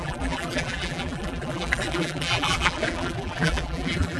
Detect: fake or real fake